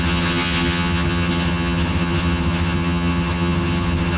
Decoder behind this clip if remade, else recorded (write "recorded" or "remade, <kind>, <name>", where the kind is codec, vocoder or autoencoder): remade, vocoder, HiFi-GAN